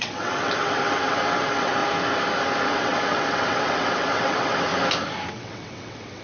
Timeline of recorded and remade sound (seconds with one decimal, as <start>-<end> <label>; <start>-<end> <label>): 0.0-1.8 remade; 1.8-2.7 recorded; 2.7-4.7 remade; 4.7-5.3 recorded; 5.3-6.2 remade

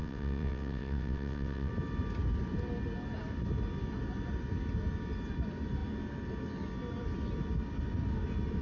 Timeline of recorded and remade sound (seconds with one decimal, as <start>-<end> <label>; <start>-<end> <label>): 0.0-1.7 remade; 1.7-8.6 recorded

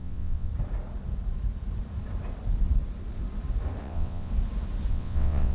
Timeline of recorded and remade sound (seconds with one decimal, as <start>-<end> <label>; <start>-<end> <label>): 0.0-0.5 remade; 0.5-3.8 recorded; 3.8-4.3 remade; 4.3-4.9 recorded; 4.9-5.5 remade

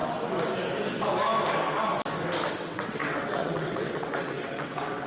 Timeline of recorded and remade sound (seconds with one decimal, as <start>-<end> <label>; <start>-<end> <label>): 0.0-2.5 recorded; 2.5-5.1 remade

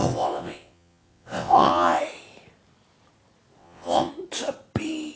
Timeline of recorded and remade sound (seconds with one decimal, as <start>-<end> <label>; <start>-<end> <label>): 0.0-2.0 remade; 2.0-3.6 recorded; 3.6-4.1 remade; 4.1-5.2 recorded

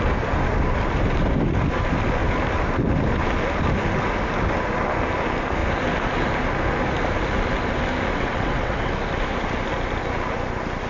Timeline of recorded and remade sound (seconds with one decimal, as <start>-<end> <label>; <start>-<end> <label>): 0.0-8.1 recorded; 8.1-8.9 remade; 8.9-10.9 recorded

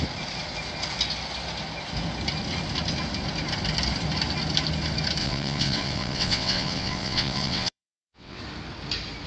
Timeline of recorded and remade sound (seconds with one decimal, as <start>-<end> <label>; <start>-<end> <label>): 0.0-5.2 recorded; 5.2-8.4 remade; 8.4-9.3 recorded